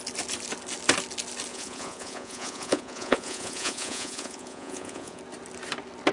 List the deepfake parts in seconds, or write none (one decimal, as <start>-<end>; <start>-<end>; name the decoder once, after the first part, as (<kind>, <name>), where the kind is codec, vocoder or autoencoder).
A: 1.5-5.2 (vocoder, Vocos)